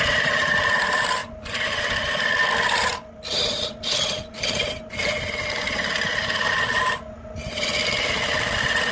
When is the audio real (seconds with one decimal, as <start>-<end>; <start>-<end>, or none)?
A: 0.0-8.9